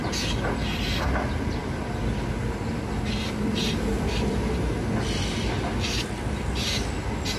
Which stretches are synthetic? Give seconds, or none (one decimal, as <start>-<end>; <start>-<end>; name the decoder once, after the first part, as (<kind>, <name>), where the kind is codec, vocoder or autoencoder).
none